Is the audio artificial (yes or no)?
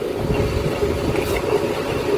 no